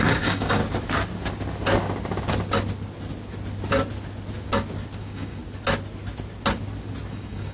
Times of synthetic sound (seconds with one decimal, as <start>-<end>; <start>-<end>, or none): 0.0-0.6; 5.0-5.4; 7.1-7.5